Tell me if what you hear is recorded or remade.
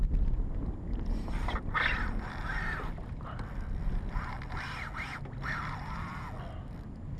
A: recorded